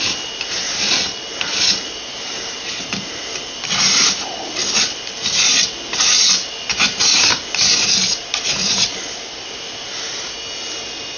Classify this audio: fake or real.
real